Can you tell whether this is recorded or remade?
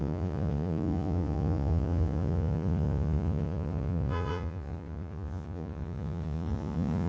remade